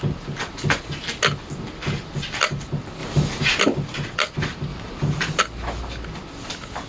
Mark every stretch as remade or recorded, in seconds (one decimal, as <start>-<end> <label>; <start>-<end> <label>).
0.0-3.0 recorded; 3.0-3.6 remade; 3.6-4.7 recorded; 4.7-5.4 remade; 5.4-6.9 recorded

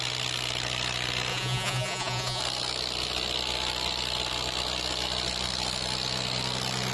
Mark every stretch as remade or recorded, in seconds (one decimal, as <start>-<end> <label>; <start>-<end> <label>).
0.0-1.3 recorded; 1.3-2.4 remade; 2.4-6.9 recorded

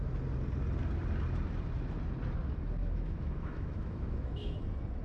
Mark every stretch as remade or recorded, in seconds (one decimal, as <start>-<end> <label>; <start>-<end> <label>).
0.0-2.8 recorded; 2.8-4.6 remade; 4.6-5.0 recorded

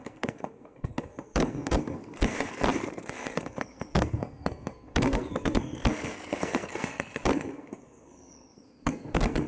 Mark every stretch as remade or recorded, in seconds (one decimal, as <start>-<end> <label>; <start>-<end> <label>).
0.0-9.5 remade